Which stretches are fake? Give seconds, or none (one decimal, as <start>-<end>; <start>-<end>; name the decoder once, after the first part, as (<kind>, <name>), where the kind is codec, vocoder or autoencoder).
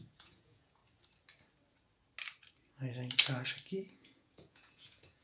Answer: 0.0-0.8 (vocoder, Vocos); 3.9-5.2